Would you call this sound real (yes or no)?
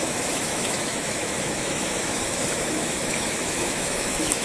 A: no